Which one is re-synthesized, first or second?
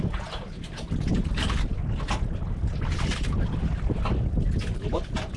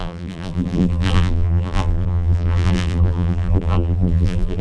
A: second